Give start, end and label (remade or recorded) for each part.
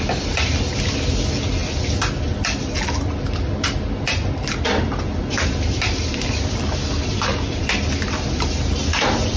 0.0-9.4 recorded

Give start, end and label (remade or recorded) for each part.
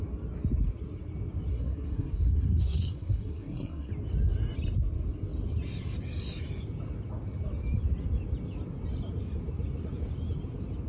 0.0-1.5 recorded; 1.5-3.9 remade; 3.9-10.9 recorded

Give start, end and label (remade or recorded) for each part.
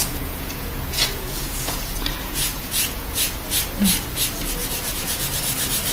0.0-3.5 remade; 3.5-4.6 recorded; 4.6-5.4 remade; 5.4-5.9 recorded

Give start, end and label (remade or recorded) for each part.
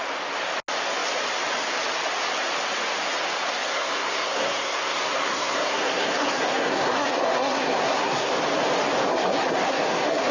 0.0-3.7 recorded; 3.7-8.3 remade; 8.3-9.1 recorded; 9.1-10.3 remade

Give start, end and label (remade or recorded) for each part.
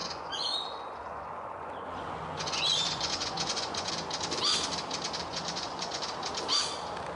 0.0-3.9 remade; 3.9-5.3 recorded; 5.3-6.0 remade; 6.0-7.2 recorded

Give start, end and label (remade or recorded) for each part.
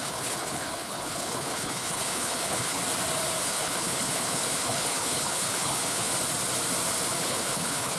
0.0-2.8 remade; 2.8-3.4 recorded; 3.4-6.1 remade; 6.1-7.2 recorded; 7.2-8.0 remade